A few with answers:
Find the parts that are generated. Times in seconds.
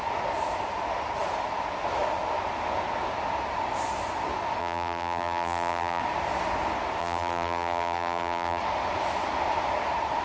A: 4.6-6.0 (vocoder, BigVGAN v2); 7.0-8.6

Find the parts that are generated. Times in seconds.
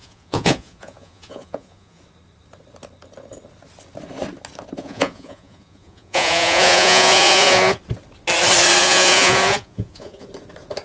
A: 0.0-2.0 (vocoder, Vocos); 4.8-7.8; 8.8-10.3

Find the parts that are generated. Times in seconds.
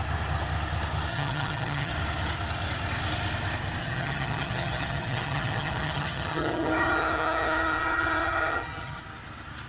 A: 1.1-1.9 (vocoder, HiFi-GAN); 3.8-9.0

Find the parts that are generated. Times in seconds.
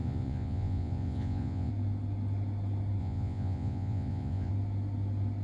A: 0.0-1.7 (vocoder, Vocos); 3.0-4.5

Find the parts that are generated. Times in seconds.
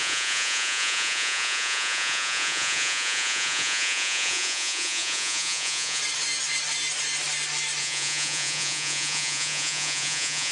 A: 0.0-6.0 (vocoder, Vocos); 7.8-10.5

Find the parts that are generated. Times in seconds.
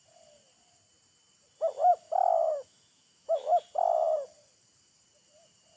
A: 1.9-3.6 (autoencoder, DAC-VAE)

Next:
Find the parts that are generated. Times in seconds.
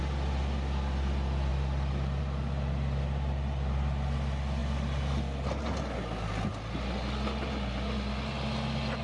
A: none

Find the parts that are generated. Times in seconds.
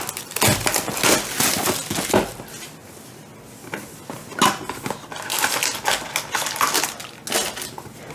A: none